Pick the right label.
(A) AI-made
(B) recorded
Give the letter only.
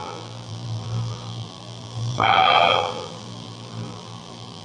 A